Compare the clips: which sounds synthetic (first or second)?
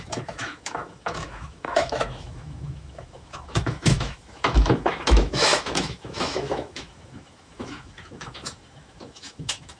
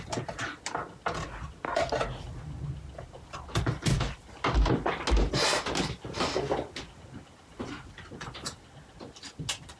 first